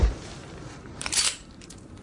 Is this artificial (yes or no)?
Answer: yes